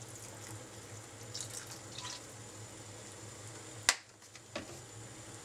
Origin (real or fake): real